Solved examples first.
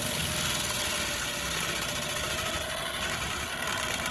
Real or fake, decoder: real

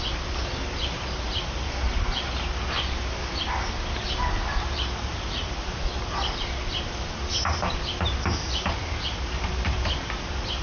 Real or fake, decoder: real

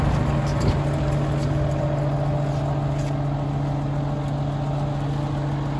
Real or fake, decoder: real